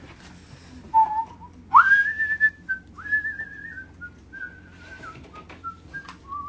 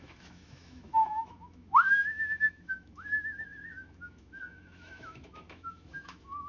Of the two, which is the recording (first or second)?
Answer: first